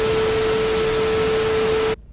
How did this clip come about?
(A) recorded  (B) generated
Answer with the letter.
A